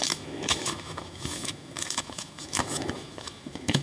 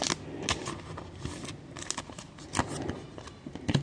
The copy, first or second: first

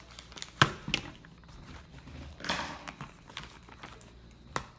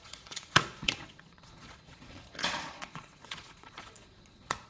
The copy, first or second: second